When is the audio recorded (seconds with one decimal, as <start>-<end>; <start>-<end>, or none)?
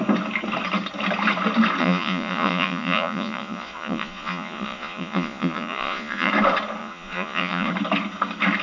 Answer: 0.0-1.8; 6.3-6.8; 7.7-8.6